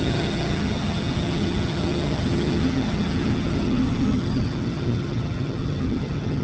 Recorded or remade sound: remade